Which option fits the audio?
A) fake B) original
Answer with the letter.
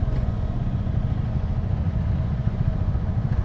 A